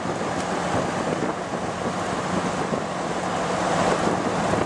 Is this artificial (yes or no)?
no